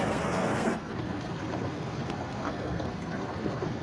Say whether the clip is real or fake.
fake